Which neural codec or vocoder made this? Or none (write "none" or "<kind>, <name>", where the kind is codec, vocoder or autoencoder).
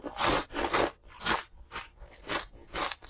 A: none